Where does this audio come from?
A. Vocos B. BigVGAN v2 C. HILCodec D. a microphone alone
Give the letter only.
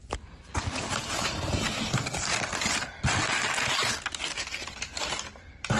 D